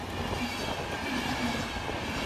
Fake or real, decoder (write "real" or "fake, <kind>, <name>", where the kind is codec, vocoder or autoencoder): real